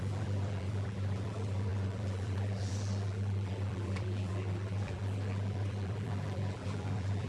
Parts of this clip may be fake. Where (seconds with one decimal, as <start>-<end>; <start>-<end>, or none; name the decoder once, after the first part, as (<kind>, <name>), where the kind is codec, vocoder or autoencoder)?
0.0-7.3 (vocoder, BigVGAN v2)